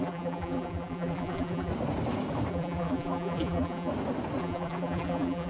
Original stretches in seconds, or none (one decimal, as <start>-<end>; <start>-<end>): 1.7-2.5; 3.9-4.4